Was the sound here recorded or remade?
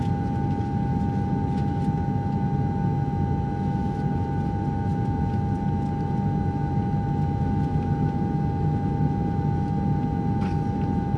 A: recorded